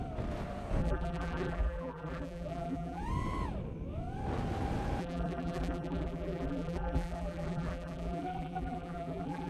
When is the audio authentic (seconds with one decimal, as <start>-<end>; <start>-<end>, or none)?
0.0-0.8; 3.0-5.0

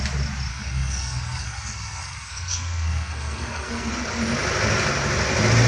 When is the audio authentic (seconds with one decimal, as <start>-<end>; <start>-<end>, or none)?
0.0-0.5; 3.9-5.7

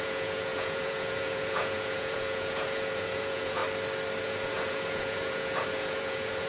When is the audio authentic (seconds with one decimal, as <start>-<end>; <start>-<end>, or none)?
3.6-4.2